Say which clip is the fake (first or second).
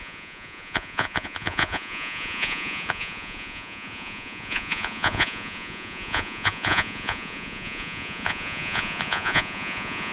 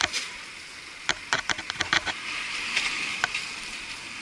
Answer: first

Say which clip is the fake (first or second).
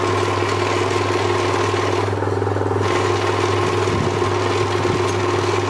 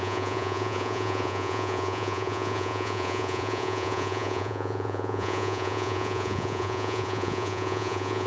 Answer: second